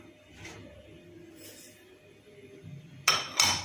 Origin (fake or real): real